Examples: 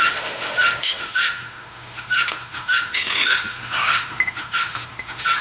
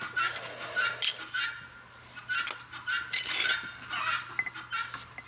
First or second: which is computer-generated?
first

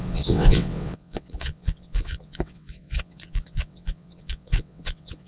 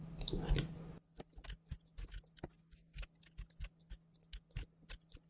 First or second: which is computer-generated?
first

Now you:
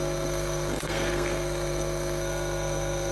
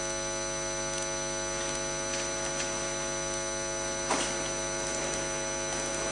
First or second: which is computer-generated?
first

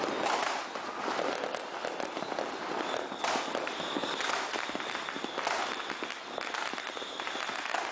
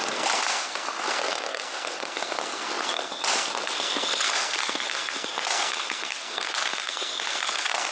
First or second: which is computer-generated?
second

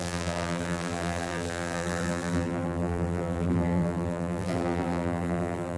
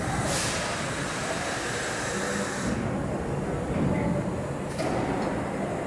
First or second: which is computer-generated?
first